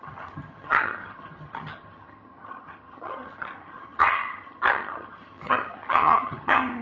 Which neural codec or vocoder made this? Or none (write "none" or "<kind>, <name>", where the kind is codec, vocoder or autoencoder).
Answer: vocoder, HiFi-GAN